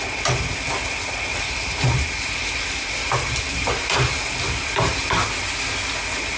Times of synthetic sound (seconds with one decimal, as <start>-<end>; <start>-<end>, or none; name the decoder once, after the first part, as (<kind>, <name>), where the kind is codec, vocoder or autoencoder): 1.3-5.1 (vocoder, BigVGAN v2)